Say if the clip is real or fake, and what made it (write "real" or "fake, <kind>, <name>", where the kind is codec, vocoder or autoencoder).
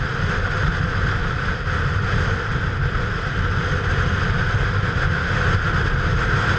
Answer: real